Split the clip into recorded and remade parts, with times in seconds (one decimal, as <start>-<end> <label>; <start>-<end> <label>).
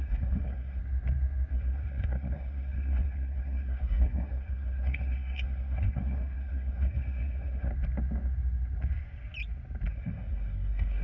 0.0-0.8 remade; 0.8-1.5 recorded; 1.5-7.7 remade; 7.7-9.9 recorded; 9.9-11.0 remade